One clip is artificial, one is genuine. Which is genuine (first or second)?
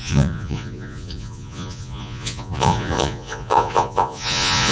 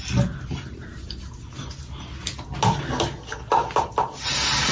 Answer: second